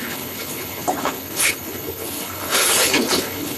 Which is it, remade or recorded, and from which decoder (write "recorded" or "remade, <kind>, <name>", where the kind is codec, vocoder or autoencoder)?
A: remade, codec, HILCodec